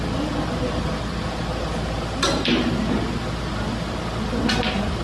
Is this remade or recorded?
recorded